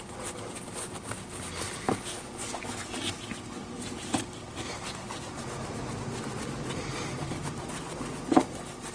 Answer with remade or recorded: recorded